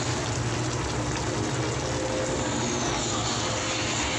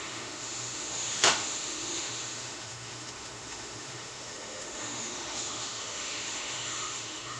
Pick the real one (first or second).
first